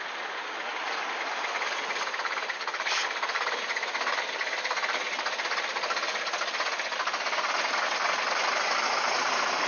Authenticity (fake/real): real